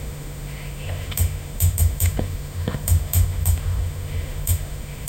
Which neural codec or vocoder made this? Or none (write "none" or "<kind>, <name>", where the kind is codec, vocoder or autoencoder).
autoencoder, DAC-VAE